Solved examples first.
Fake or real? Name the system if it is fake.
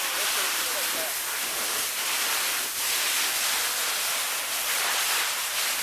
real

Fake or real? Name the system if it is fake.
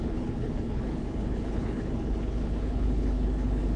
fake, codec, HILCodec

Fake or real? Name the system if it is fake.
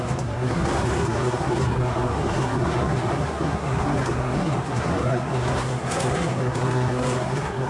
fake, codec, SNAC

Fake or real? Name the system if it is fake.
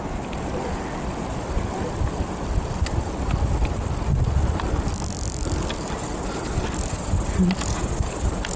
real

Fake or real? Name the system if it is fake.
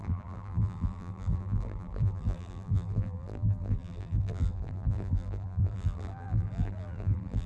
fake, vocoder, BigVGAN v2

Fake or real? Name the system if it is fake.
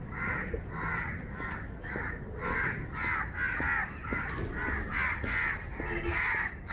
real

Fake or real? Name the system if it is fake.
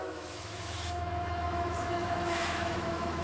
fake, autoencoder, DAC-VAE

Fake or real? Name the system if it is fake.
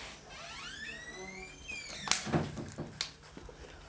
real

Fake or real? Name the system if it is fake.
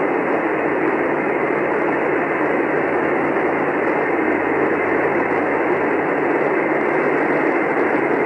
real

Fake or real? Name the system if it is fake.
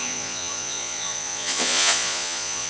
fake, vocoder, Vocos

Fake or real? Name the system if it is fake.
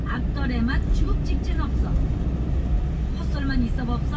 real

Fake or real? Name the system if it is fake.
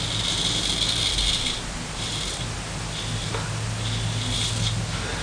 real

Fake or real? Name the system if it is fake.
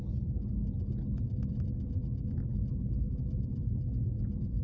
real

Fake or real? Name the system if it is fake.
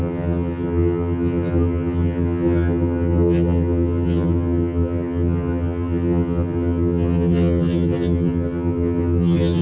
fake, vocoder, HiFi-GAN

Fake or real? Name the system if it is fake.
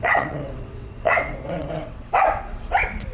fake, vocoder, WaveNeXt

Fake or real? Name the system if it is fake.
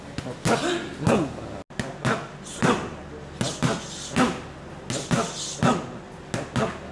real